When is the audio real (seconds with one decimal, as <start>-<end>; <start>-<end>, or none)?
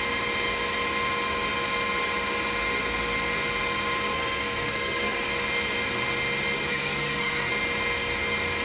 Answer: 0.0-4.1; 5.3-6.7; 7.5-8.6